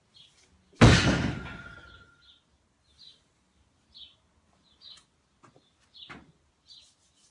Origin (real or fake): real